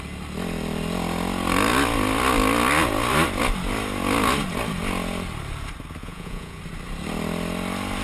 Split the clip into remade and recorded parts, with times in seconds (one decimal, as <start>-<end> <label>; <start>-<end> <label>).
0.0-6.0 recorded; 6.0-6.6 remade; 6.6-8.0 recorded